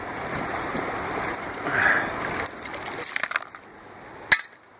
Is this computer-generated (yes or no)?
no